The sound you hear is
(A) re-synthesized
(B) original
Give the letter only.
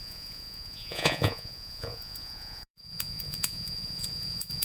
A